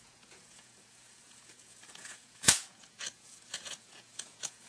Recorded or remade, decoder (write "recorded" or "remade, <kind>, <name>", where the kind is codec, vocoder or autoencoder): remade, vocoder, Vocos